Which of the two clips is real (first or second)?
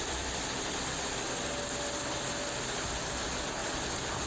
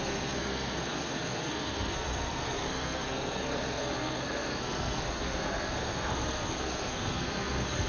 first